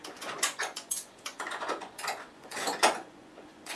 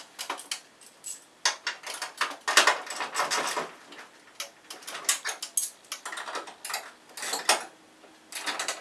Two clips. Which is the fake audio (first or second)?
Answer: first